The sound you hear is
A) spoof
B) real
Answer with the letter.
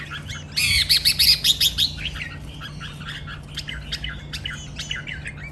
B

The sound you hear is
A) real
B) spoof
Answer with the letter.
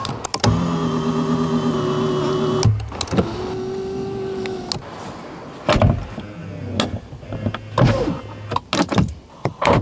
A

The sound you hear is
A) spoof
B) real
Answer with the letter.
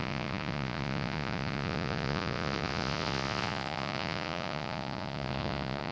A